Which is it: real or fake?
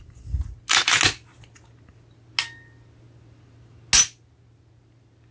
real